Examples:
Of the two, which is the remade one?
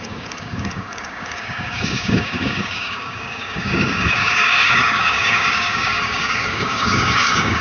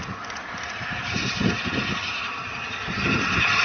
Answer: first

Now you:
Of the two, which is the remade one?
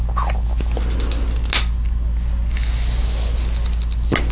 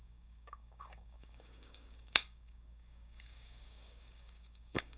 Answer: second